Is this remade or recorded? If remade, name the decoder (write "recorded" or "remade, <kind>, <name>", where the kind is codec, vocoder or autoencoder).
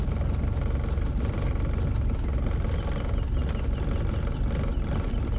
recorded